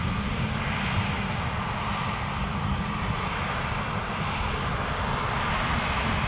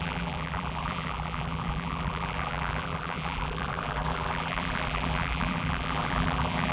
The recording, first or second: first